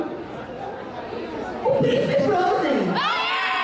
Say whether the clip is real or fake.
real